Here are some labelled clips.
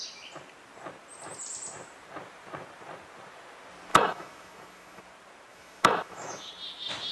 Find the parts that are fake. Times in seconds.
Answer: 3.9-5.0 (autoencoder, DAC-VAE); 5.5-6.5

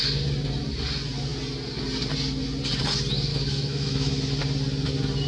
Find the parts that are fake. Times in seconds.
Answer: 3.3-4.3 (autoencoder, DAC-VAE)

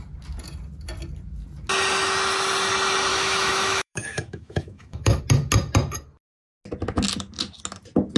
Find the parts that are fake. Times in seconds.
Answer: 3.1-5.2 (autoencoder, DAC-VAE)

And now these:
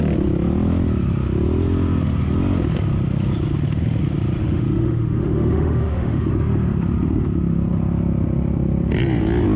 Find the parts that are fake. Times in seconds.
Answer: 4.4-6.3 (autoencoder, DAC-VAE)